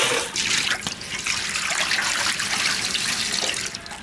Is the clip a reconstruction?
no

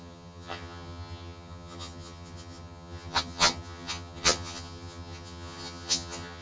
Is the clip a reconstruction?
yes